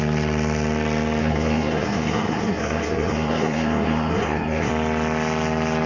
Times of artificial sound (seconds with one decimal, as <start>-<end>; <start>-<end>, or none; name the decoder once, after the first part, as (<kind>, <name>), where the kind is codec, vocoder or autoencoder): 1.2-4.7 (codec, SNAC)